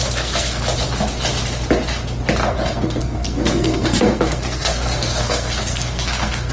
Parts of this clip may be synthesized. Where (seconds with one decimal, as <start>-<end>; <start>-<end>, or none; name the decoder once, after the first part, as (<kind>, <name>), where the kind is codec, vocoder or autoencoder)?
0.0-0.6 (codec, SNAC); 2.4-6.5